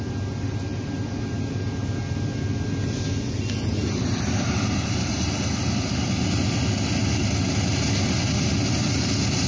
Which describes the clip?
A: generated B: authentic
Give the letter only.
B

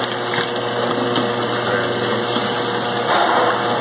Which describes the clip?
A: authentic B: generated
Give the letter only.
A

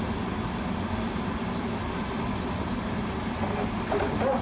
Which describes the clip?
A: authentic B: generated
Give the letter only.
A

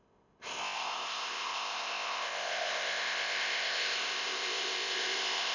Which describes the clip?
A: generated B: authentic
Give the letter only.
A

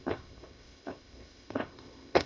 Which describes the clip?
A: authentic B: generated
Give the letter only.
B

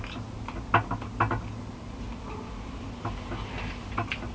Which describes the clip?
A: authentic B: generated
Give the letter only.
A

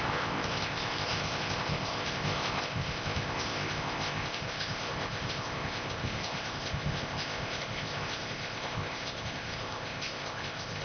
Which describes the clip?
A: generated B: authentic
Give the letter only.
A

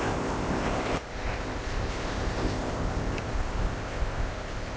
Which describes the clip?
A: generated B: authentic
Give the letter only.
A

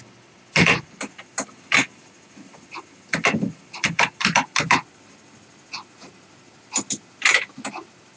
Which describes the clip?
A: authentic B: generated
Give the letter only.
A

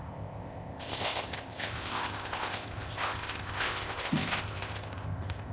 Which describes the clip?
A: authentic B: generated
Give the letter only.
B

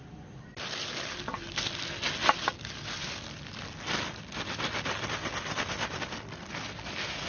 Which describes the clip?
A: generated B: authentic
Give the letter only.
B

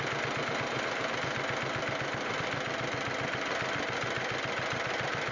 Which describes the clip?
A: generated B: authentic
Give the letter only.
B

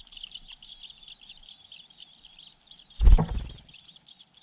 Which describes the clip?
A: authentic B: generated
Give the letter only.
A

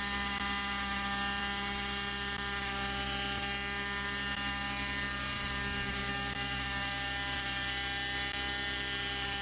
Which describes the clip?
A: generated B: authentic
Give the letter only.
B